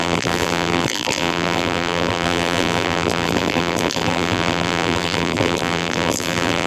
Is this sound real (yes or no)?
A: no